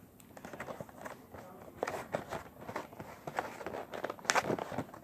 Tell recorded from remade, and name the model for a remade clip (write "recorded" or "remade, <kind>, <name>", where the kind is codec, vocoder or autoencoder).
recorded